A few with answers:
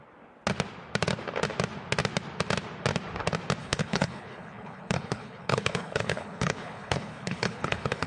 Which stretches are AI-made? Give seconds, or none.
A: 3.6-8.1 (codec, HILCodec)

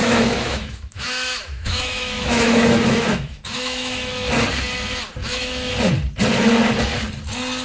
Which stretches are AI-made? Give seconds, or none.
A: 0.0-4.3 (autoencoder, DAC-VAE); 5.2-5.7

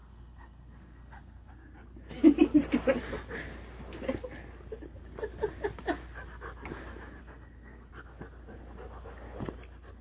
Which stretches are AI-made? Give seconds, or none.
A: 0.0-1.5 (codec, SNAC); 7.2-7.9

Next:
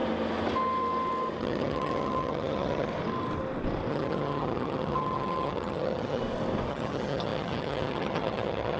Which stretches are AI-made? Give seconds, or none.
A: 1.4-2.9 (vocoder, HiFi-GAN); 3.9-6.2; 6.7-8.8

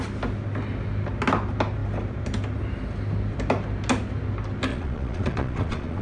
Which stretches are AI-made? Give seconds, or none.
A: 4.7-6.0 (vocoder, Vocos)

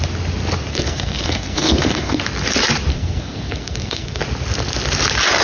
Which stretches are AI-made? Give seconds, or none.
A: 0.7-2.2 (codec, SNAC); 2.9-4.2

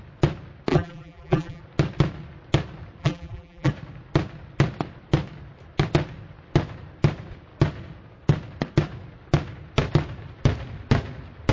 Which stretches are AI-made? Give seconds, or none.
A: 0.7-1.6 (vocoder, BigVGAN v2); 3.0-3.7